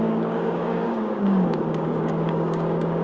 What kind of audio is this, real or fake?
fake